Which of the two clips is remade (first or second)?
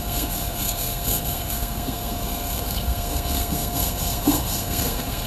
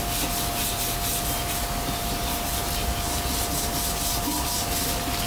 first